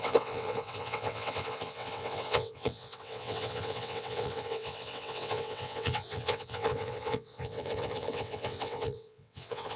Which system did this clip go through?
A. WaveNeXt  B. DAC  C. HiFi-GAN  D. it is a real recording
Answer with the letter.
A